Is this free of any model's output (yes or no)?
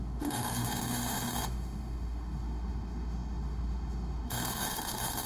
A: no